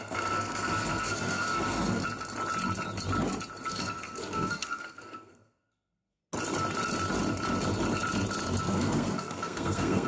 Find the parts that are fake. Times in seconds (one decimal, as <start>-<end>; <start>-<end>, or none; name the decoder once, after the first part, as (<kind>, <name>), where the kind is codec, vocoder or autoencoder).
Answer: 0.0-2.0 (codec, SNAC); 3.7-6.2; 8.6-10.1